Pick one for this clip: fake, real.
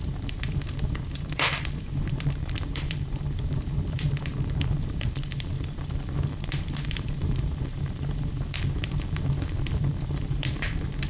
fake